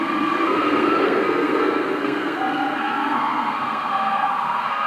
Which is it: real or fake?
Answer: fake